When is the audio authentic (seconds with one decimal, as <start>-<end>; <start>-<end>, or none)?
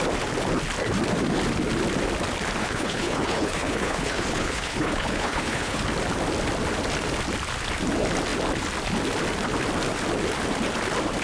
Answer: 0.0-2.6; 5.8-11.2